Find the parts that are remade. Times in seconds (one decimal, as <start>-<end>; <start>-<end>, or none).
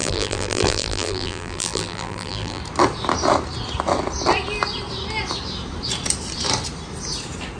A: 0.0-2.6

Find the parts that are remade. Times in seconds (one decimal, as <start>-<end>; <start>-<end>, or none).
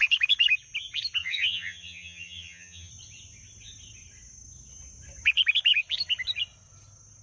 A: 1.2-2.9